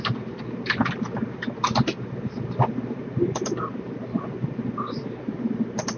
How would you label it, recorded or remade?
recorded